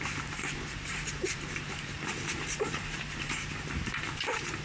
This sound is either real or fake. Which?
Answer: fake